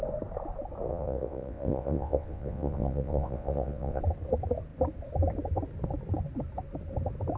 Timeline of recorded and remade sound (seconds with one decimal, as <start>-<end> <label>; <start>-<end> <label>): 0.0-0.9 recorded; 0.9-4.0 remade; 4.0-7.4 recorded